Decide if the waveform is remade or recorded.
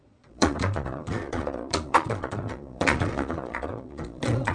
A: remade